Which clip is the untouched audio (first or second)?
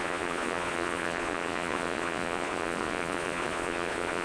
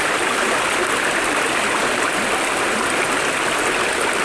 second